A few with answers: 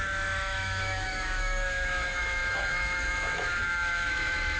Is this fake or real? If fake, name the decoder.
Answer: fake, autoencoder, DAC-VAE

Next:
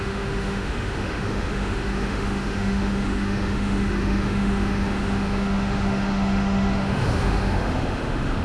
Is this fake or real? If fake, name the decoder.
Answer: fake, autoencoder, DAC-VAE